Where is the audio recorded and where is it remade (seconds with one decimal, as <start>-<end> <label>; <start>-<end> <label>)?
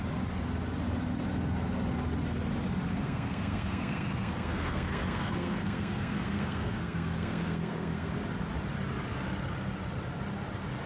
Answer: 0.0-2.9 recorded; 2.9-8.1 remade; 8.1-10.9 recorded